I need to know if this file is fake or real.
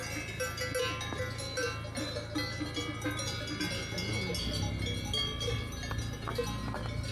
real